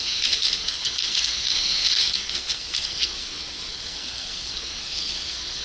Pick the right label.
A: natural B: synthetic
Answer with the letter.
B